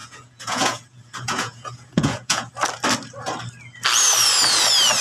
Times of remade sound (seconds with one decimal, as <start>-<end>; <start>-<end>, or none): 0.0-2.5